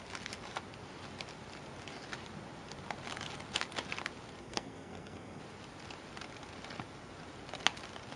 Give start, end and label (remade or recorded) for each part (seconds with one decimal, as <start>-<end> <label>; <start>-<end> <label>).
0.0-4.4 recorded; 4.4-5.4 remade; 5.4-8.2 recorded